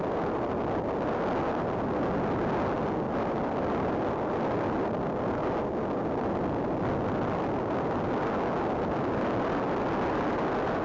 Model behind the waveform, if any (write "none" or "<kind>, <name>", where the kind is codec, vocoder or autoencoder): none